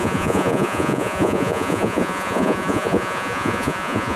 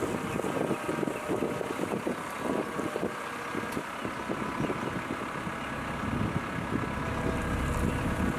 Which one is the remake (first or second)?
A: first